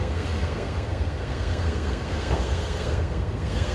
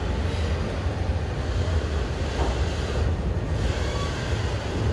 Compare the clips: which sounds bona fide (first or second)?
second